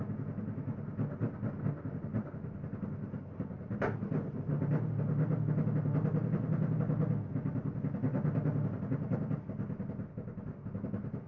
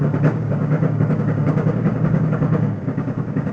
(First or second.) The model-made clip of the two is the second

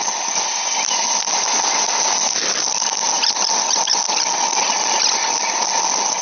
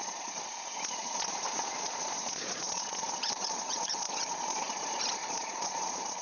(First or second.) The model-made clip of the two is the second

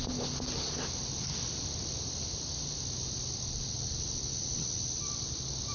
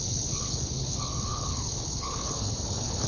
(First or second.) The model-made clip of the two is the second